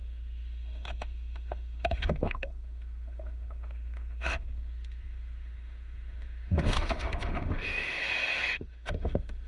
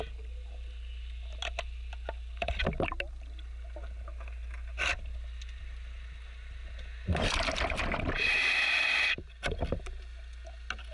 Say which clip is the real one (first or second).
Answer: second